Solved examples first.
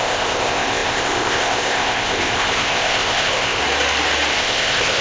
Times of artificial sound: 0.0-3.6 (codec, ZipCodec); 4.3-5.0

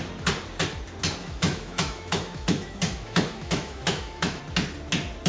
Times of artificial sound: 1.2-4.4 (autoencoder, DAC-VAE)